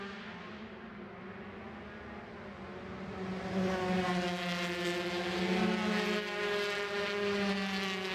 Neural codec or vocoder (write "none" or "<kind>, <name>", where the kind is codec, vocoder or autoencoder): none